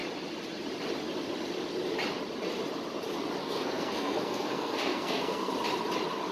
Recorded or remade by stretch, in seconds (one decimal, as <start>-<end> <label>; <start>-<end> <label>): 0.0-3.4 recorded; 3.4-5.5 remade; 5.5-6.3 recorded